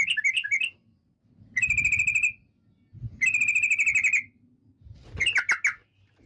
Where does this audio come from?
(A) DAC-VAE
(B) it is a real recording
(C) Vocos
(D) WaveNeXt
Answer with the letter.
B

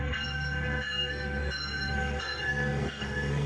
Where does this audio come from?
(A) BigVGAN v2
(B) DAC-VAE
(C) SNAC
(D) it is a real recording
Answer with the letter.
C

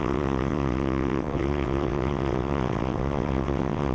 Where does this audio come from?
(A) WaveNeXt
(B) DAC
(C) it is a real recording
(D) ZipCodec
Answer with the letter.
A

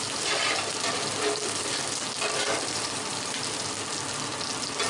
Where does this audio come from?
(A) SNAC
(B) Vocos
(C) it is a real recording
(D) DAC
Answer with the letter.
C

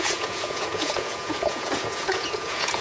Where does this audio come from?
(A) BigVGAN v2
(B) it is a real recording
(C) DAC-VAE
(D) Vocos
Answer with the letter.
D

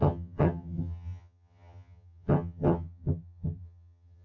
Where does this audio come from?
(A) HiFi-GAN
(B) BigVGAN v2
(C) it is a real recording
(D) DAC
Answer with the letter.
A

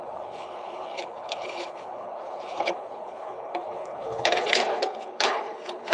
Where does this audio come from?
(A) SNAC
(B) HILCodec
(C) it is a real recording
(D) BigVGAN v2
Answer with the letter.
B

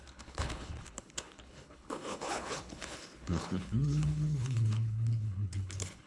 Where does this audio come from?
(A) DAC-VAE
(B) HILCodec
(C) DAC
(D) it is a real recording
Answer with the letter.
B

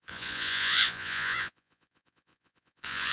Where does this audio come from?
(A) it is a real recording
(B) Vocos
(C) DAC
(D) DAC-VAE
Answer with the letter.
B